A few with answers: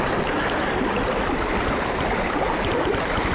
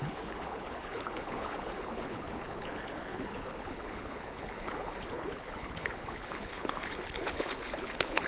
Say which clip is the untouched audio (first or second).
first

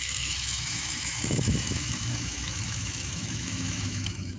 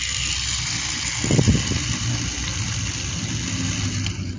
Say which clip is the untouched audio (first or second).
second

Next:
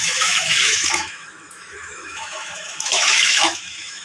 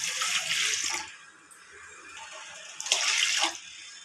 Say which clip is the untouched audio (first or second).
second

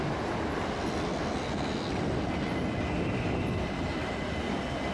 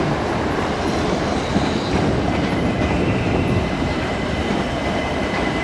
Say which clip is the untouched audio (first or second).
first